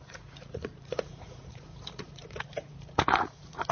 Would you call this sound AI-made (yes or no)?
yes